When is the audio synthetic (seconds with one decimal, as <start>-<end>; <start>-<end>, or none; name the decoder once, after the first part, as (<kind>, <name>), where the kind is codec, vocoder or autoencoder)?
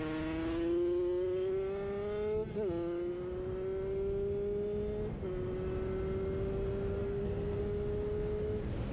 7.0-7.6 (codec, SNAC)